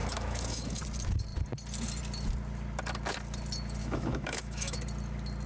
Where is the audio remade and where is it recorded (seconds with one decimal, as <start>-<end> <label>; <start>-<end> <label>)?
0.0-0.8 remade; 0.8-3.8 recorded; 3.8-4.8 remade; 4.8-5.5 recorded